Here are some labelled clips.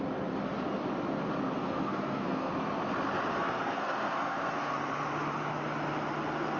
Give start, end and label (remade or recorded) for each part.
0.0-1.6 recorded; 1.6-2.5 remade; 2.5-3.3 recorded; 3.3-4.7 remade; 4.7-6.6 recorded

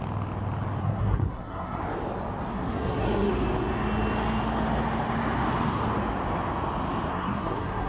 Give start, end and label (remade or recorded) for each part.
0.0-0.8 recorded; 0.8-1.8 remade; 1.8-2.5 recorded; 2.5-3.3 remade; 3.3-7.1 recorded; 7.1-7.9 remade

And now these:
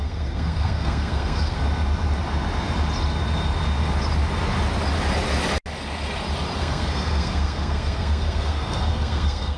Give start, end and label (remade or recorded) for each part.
0.0-1.6 remade; 1.6-6.6 recorded; 6.6-9.6 remade